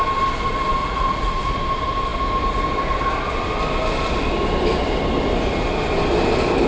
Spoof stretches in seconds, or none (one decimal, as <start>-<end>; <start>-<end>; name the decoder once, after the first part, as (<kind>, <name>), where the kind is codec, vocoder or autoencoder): 0.8-1.6 (vocoder, Vocos)

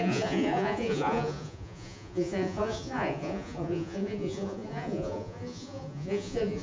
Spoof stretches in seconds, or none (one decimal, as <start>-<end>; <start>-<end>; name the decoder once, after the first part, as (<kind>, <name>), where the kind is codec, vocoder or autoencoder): 0.0-6.6 (vocoder, Vocos)

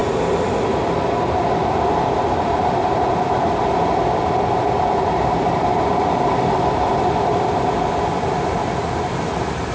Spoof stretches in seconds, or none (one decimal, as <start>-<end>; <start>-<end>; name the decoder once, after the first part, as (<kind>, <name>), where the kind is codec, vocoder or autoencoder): none

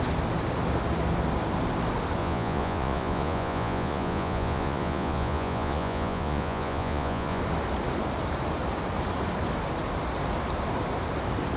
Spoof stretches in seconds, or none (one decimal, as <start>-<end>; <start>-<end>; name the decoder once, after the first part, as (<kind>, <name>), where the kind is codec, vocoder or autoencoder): 2.2-7.4 (vocoder, Vocos)

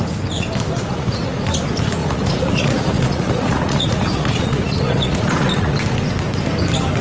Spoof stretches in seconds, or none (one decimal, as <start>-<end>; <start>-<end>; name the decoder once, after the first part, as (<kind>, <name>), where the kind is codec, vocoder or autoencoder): 0.9-1.4 (vocoder, Vocos); 2.0-5.7

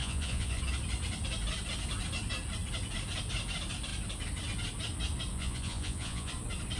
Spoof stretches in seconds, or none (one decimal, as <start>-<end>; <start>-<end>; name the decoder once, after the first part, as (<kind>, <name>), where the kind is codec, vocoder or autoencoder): 0.0-0.6 (vocoder, Vocos); 5.3-6.3

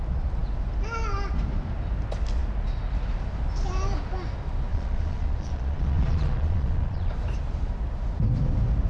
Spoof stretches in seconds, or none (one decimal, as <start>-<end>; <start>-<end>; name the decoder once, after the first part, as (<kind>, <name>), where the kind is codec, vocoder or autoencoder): 4.7-7.1 (vocoder, Vocos)

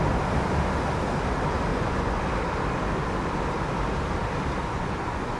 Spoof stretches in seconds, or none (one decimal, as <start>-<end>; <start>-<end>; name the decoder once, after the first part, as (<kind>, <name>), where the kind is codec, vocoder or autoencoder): 1.7-2.2 (vocoder, Vocos); 4.6-5.4